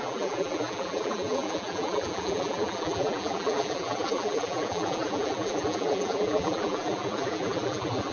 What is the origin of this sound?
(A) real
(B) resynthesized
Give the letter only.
B